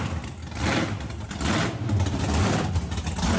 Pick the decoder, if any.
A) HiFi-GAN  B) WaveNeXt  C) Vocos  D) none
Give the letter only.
D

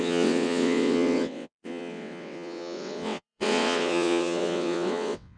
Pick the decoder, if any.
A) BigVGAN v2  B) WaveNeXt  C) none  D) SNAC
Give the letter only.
B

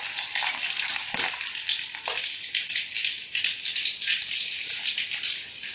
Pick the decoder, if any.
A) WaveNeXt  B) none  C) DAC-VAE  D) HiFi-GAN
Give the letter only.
B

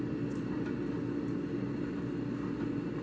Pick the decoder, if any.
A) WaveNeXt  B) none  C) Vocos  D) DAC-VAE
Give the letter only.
B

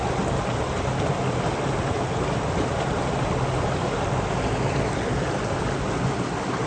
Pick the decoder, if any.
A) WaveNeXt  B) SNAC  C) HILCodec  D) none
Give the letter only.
D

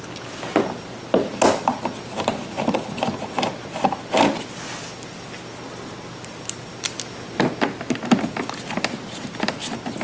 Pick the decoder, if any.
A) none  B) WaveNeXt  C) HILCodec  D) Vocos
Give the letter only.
A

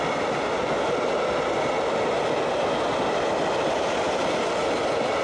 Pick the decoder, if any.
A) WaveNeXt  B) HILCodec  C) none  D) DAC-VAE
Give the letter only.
C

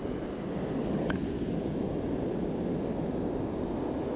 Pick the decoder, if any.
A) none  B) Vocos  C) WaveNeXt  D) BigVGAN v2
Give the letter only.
A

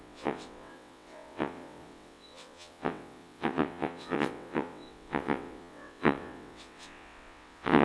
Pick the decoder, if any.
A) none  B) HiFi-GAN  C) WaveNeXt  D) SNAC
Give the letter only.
C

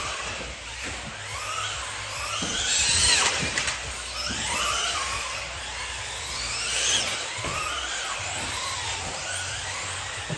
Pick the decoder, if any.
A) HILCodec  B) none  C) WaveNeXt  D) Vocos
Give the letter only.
B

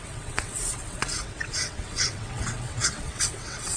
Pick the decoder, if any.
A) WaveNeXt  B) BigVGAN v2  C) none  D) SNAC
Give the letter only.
A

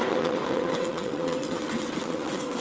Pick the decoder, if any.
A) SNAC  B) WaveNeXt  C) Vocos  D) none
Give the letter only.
B